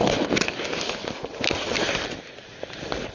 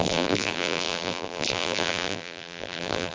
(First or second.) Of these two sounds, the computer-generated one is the second